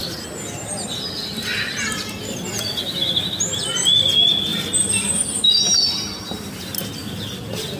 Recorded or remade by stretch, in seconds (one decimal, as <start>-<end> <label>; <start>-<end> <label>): 0.0-4.5 recorded; 4.5-5.2 remade; 5.2-7.8 recorded